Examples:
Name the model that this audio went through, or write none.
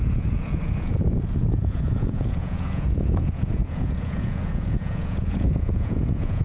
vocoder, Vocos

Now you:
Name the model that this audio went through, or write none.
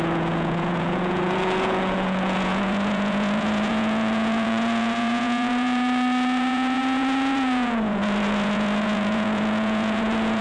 vocoder, Vocos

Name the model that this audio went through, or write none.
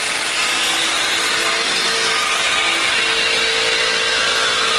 none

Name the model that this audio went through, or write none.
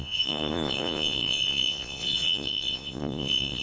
vocoder, Vocos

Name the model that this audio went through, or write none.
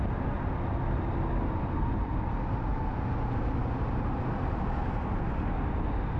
none